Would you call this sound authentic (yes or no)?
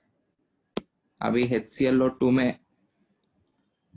yes